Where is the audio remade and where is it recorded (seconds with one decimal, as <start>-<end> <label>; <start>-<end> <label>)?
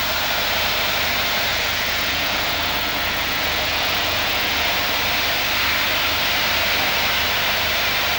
0.0-1.5 recorded; 1.5-4.7 remade; 4.7-8.2 recorded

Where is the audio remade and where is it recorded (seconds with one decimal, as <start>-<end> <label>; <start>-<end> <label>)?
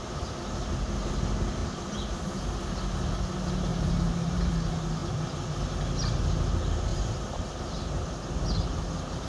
0.0-1.6 recorded; 1.6-2.6 remade; 2.6-3.7 recorded; 3.7-4.5 remade; 4.5-6.9 recorded; 6.9-8.3 remade; 8.3-9.3 recorded